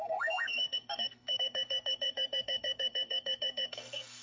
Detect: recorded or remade remade